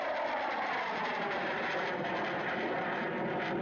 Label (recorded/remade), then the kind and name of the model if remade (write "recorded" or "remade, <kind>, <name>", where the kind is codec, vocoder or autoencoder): remade, vocoder, BigVGAN v2